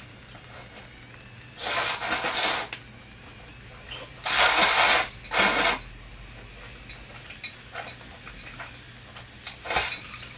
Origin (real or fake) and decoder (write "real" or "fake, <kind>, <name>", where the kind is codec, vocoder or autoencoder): real